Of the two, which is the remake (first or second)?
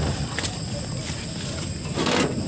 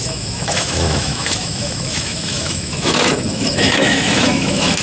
second